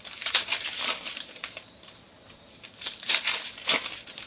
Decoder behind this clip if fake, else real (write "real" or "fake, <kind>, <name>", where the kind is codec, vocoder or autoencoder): fake, vocoder, BigVGAN v2